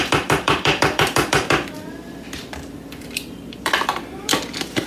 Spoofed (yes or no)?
yes